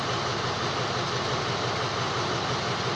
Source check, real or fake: real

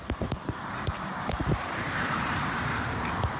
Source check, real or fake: fake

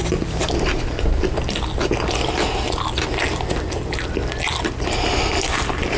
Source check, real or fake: real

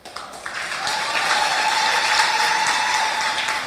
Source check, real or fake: real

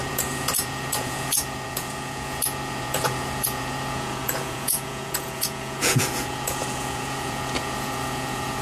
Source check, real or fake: fake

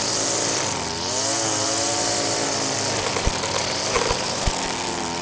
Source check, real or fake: real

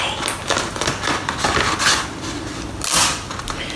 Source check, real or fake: real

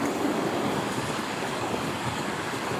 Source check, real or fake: fake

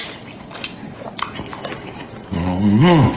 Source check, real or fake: real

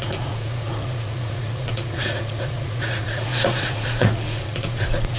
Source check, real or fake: fake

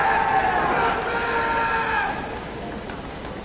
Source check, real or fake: real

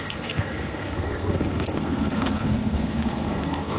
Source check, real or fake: fake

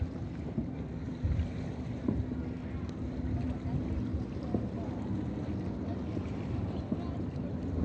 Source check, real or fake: real